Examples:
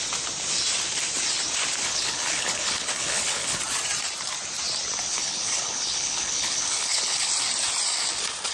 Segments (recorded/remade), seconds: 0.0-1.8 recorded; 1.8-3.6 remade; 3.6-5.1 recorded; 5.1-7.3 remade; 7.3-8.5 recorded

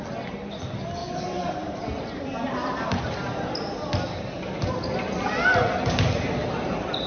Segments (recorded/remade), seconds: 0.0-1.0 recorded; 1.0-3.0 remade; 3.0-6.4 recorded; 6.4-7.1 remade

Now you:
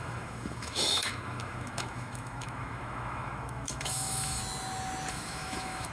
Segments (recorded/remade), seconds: 0.0-4.4 remade; 4.4-5.1 recorded; 5.1-5.9 remade

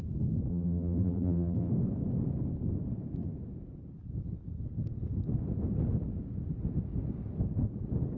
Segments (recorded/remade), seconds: 0.0-0.5 recorded; 0.5-1.7 remade; 1.7-8.2 recorded

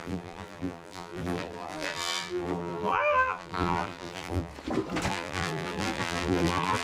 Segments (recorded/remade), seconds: 0.0-4.5 remade; 4.5-5.1 recorded; 5.1-6.8 remade

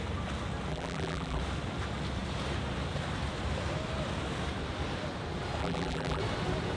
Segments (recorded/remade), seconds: 0.0-0.7 recorded; 0.7-1.4 remade; 1.4-5.6 recorded; 5.6-6.2 remade; 6.2-6.8 recorded

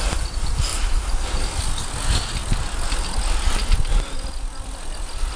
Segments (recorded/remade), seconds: 0.0-5.4 recorded

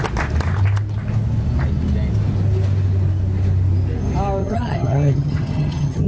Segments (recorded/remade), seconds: 0.0-4.4 recorded; 4.4-6.1 remade